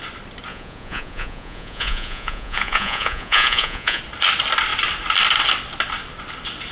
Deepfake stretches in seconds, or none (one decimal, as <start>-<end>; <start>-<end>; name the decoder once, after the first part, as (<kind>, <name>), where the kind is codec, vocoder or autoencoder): 0.5-4.0 (vocoder, Vocos)